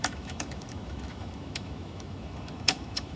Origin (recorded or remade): remade